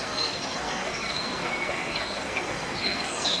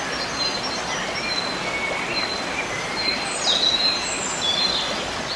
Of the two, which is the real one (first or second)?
second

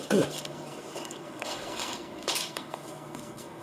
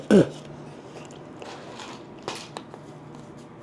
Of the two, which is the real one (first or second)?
second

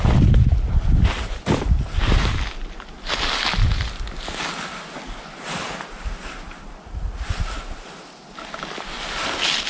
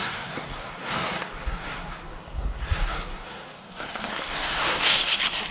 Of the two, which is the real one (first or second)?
first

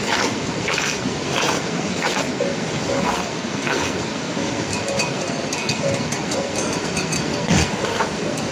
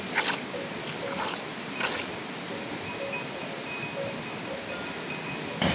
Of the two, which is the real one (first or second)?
second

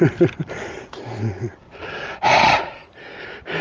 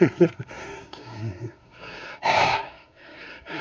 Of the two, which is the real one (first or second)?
first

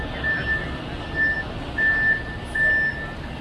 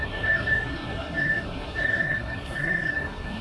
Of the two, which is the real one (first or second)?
first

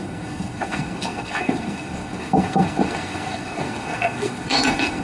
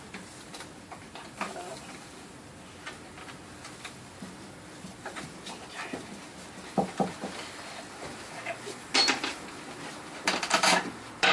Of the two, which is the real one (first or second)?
second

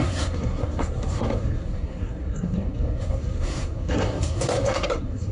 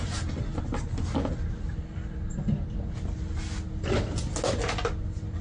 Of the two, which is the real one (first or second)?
second